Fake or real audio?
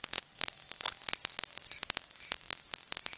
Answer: real